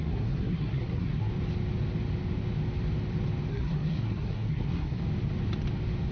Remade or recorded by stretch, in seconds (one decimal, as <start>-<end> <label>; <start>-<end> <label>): 0.0-1.3 remade; 1.3-3.5 recorded; 3.5-5.0 remade; 5.0-6.1 recorded

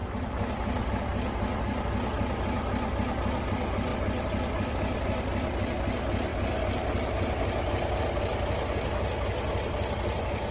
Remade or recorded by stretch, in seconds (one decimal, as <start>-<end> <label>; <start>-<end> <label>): 0.0-10.5 recorded